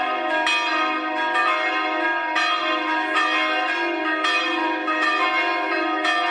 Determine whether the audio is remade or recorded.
recorded